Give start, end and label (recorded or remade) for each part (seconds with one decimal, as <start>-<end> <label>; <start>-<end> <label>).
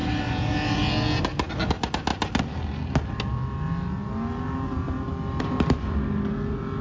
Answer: 0.0-6.8 recorded